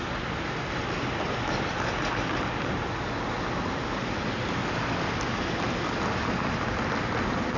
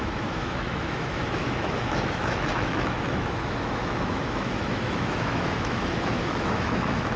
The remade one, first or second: second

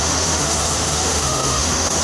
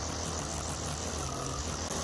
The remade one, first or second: first